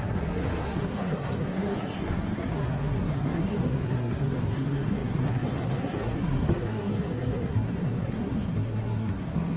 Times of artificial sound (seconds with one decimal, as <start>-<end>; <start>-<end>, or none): 0.0-9.6